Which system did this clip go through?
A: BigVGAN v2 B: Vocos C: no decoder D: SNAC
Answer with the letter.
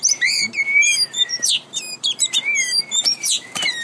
A